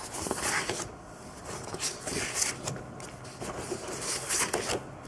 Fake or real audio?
real